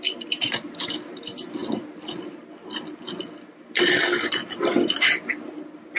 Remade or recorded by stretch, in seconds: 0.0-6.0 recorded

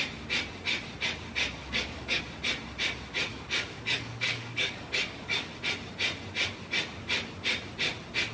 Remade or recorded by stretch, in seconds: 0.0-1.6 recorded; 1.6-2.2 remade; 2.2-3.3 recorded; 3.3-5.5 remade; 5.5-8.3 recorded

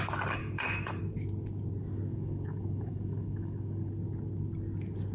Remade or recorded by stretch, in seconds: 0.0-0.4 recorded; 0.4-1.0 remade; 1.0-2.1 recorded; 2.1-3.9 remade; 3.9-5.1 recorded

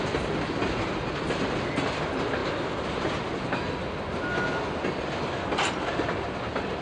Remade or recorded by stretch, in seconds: 0.0-6.8 recorded

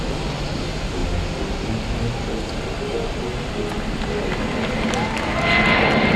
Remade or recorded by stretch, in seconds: 0.0-6.2 recorded